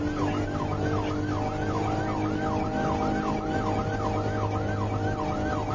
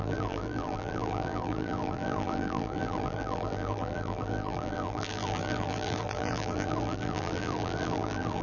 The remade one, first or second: second